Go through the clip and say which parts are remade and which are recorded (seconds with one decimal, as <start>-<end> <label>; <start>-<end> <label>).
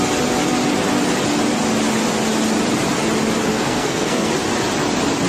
0.0-3.5 recorded; 3.5-4.3 remade; 4.3-5.3 recorded